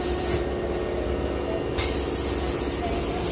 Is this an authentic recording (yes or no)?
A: yes